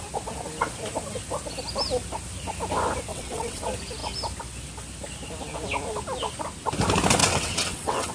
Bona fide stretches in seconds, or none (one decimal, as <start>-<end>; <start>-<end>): 0.0-3.1; 3.6-7.2